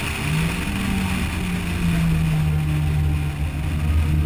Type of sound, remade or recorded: recorded